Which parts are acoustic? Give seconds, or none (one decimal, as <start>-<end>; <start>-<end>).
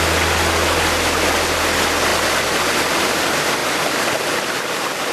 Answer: 0.0-5.1